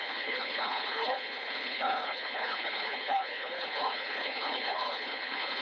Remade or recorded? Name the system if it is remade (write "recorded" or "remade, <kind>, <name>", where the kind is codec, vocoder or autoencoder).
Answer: remade, codec, HILCodec